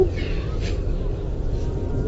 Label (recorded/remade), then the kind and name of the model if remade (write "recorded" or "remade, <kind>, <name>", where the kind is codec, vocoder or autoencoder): recorded